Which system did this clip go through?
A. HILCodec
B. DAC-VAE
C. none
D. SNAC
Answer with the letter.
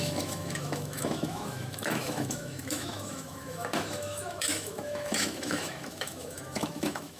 B